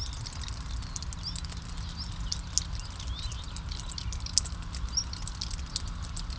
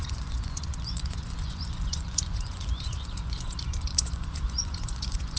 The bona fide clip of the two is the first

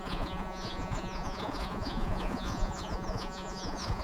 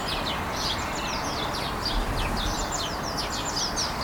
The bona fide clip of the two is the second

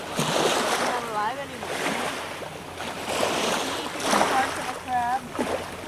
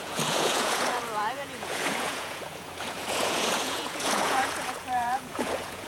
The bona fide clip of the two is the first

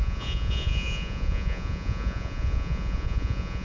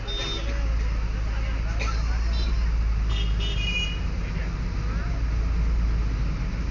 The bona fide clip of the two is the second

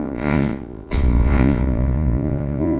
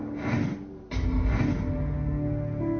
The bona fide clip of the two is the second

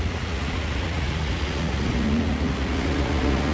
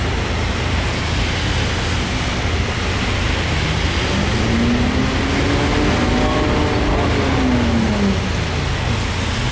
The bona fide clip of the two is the second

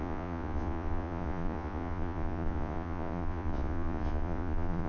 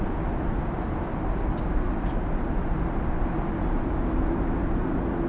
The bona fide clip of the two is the second